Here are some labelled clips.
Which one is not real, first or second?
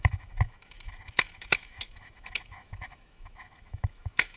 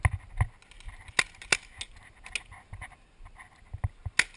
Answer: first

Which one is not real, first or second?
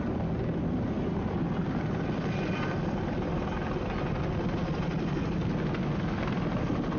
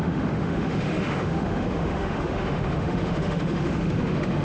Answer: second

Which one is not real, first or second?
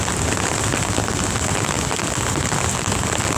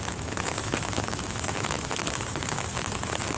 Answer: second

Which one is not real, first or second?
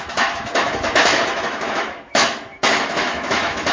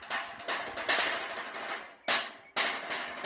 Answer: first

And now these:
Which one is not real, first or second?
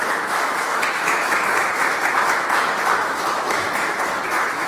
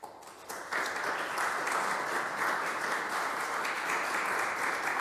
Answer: first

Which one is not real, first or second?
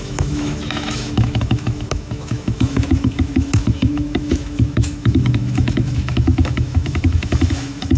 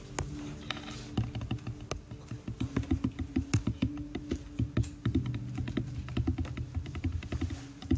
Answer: first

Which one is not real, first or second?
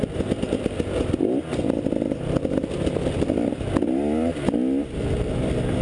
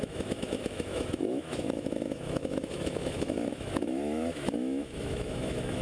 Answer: second